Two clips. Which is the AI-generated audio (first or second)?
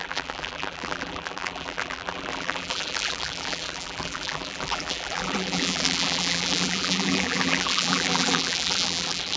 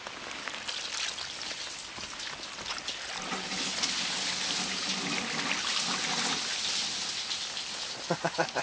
first